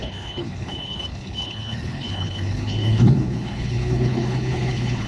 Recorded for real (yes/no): no